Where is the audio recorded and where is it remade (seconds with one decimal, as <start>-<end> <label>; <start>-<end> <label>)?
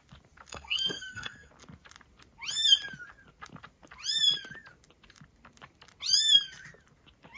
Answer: 0.0-0.5 recorded; 0.5-1.5 remade; 1.5-7.4 recorded